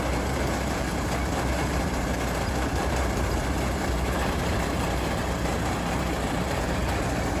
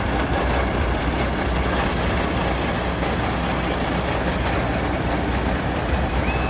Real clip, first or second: second